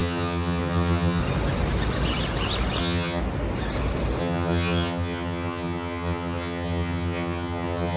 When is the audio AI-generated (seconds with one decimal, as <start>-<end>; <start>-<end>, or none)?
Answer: 0.0-1.2; 2.8-3.2; 4.2-8.0